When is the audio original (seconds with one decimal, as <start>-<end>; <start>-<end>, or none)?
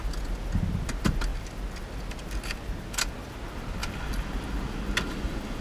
0.0-5.6